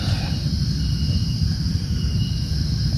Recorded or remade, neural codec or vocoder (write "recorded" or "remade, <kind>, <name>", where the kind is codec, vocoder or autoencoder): recorded